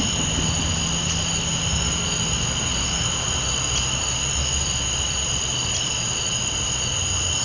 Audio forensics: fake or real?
real